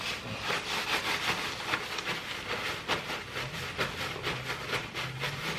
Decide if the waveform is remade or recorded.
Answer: recorded